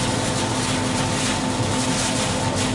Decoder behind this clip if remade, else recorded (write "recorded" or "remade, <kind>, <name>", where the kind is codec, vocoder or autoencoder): recorded